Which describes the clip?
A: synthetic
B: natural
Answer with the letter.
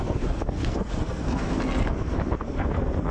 A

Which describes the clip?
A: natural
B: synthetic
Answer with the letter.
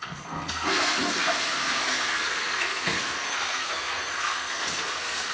B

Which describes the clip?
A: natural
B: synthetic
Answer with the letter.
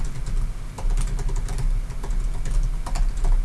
A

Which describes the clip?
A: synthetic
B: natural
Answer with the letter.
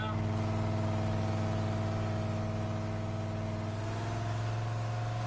B